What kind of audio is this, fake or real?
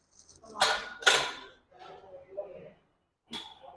real